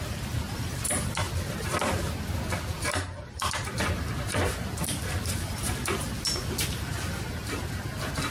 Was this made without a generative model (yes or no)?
no